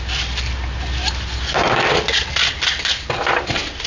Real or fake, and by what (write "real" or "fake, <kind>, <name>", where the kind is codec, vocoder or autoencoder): real